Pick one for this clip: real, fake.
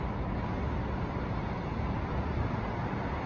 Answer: real